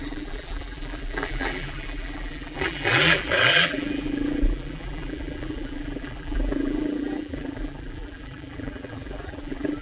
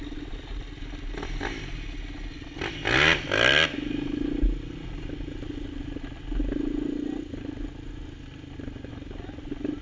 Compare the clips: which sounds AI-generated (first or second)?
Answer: first